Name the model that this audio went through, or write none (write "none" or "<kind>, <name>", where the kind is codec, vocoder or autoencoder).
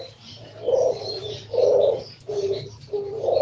vocoder, BigVGAN v2